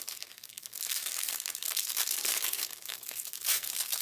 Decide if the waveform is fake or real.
fake